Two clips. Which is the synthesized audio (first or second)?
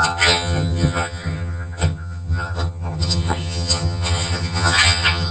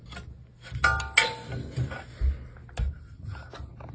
first